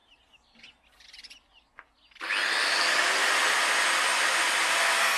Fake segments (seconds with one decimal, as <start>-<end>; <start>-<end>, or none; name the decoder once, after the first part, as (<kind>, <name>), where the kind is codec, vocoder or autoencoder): none